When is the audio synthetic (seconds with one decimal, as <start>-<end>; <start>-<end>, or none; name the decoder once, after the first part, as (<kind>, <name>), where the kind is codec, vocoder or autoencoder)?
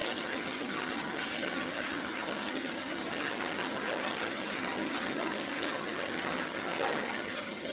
0.0-7.7 (vocoder, HiFi-GAN)